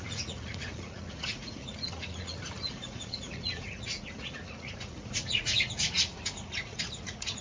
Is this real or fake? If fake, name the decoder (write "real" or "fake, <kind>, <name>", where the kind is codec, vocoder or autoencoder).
fake, vocoder, Vocos